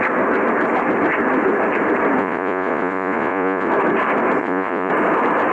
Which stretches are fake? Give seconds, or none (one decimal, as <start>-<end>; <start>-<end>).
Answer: 2.2-3.7; 4.4-4.9